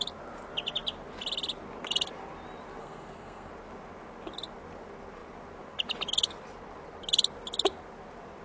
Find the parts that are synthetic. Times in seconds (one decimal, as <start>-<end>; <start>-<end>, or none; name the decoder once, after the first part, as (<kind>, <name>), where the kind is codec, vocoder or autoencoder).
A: 2.8-3.5 (codec, SNAC)